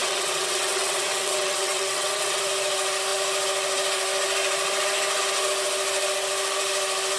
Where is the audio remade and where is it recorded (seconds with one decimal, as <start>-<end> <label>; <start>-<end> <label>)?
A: 0.0-2.4 remade; 2.4-7.2 recorded